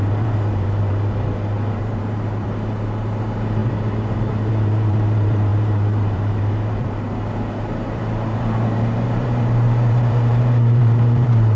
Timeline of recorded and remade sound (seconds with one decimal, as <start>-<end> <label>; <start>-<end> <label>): 0.0-11.6 remade